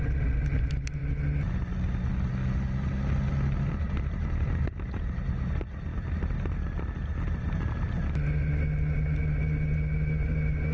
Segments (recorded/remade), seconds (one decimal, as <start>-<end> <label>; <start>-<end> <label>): 0.0-10.7 recorded